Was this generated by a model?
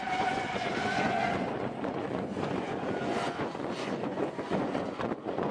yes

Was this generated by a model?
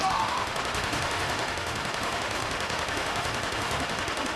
yes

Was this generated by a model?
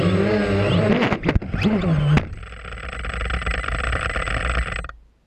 no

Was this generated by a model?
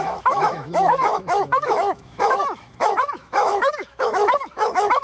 yes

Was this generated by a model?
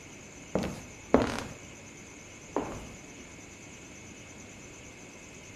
no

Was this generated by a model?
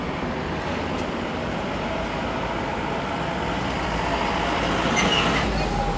no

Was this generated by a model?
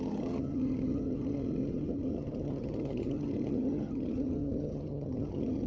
yes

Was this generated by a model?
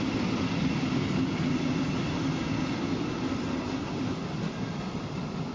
yes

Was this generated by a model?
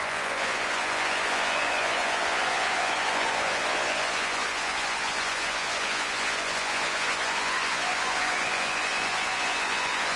yes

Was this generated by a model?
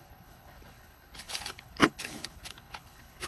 yes